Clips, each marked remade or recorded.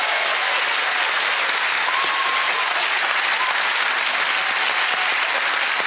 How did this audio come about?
recorded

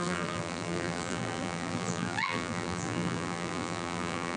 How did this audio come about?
remade